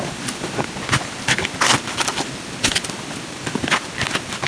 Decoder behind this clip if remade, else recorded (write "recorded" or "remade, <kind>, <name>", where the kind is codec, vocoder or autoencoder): recorded